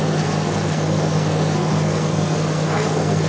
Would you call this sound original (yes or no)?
no